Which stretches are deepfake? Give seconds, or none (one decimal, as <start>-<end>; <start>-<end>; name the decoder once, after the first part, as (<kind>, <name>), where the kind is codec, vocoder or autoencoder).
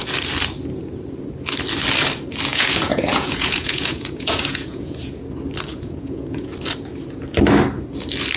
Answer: 2.5-5.1 (vocoder, Vocos); 5.7-6.5